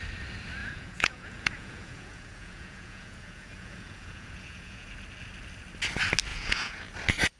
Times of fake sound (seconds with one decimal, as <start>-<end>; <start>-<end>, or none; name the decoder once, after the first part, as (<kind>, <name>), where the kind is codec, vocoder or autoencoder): 0.6-4.9 (vocoder, Vocos); 6.3-6.9